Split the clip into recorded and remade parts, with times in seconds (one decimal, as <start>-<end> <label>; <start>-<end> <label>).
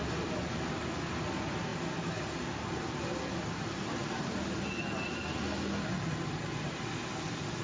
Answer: 0.0-7.6 recorded